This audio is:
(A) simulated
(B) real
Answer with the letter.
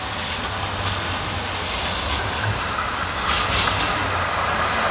B